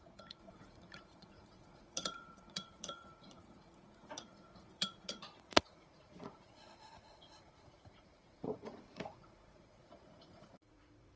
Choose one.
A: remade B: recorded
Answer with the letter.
A